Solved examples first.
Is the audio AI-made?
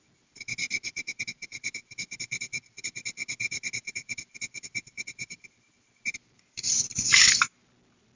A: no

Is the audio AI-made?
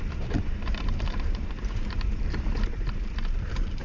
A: yes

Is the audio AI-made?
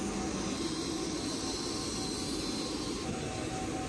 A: no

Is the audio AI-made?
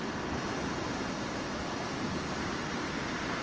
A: no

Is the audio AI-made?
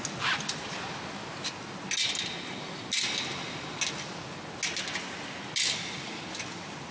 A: no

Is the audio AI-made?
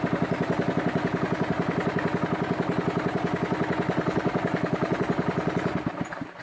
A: no